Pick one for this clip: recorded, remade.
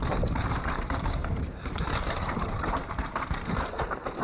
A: remade